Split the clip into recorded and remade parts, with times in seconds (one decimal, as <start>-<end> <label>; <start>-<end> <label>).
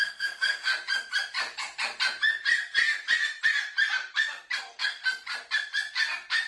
0.0-0.7 remade; 0.7-4.6 recorded; 4.6-5.0 remade; 5.0-6.5 recorded